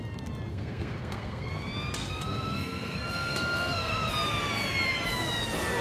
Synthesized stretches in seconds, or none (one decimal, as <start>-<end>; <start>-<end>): 0.5-1.5; 2.0-4.1